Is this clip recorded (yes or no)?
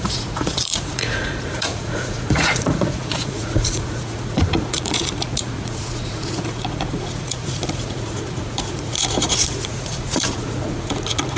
no